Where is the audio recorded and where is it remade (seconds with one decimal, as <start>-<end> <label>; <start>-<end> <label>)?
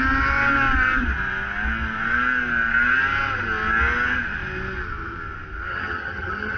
0.0-5.7 recorded; 5.7-6.6 remade